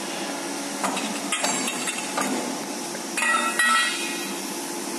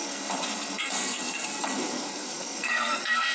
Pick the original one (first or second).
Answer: first